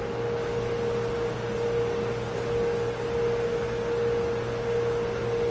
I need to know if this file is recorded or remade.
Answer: recorded